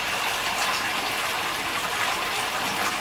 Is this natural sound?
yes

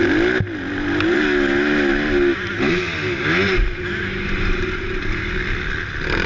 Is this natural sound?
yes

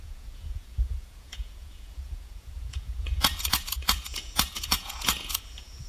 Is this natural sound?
no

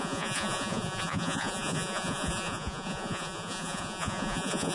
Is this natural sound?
no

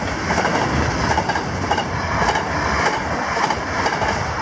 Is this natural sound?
yes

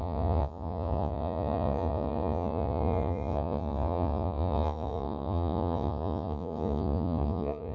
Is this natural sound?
no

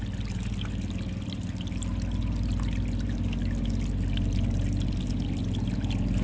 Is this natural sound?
yes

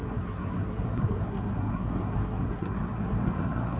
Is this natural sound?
no